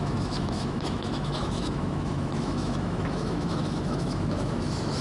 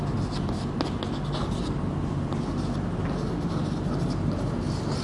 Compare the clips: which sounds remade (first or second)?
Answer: first